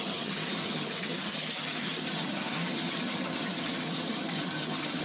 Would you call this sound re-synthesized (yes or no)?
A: yes